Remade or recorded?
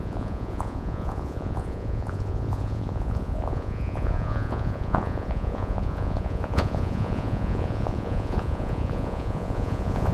remade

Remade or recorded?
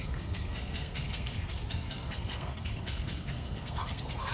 remade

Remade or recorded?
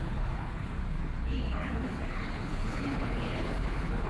remade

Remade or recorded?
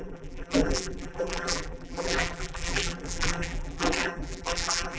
remade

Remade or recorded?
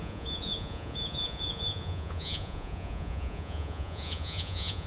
remade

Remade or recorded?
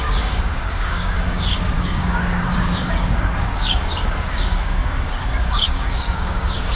remade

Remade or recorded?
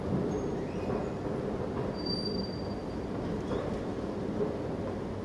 recorded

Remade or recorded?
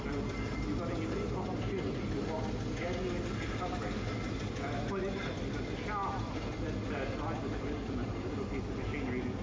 recorded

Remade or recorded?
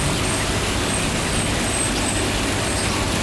recorded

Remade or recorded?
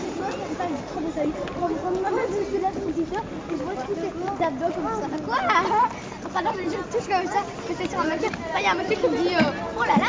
recorded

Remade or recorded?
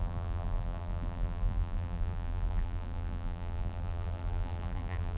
remade